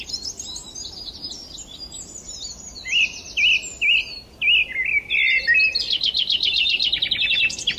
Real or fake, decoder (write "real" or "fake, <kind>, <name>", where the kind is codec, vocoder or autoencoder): real